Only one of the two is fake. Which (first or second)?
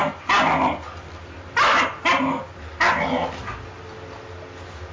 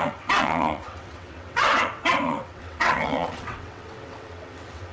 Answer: second